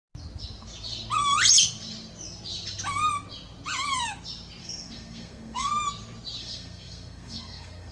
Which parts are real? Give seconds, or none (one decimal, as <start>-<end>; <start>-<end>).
0.0-4.6; 5.7-6.4